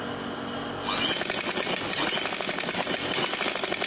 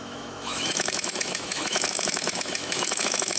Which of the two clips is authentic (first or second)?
first